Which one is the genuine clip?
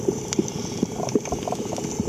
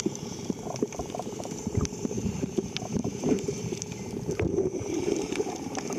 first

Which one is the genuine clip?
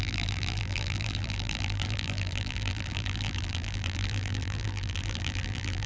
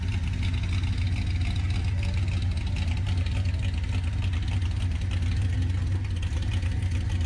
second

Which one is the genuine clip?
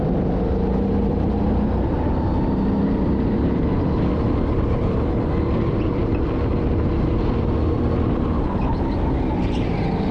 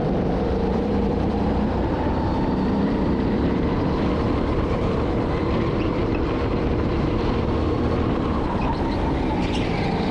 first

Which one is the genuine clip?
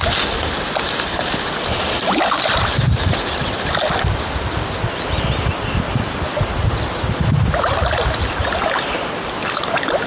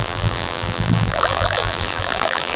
first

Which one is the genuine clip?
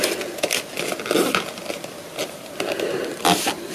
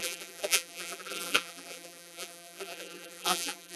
first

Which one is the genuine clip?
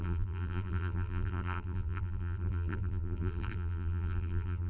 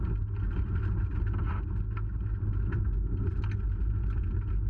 second